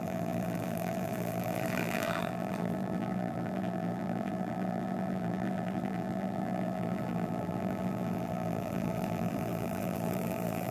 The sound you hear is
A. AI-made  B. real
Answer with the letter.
A